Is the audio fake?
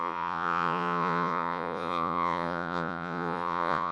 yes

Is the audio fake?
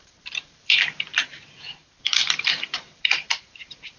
yes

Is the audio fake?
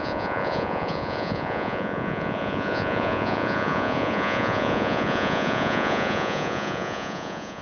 yes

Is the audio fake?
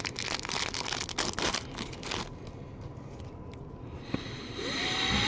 no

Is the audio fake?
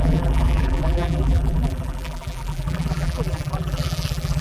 yes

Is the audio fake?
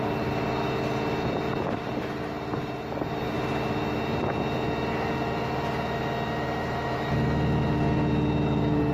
no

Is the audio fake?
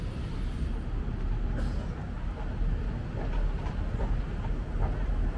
no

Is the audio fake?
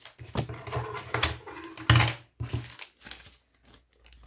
no